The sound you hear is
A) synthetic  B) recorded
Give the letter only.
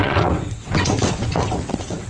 A